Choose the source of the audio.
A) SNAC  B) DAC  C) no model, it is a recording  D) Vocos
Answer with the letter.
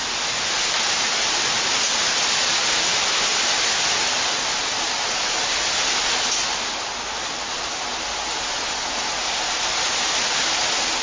C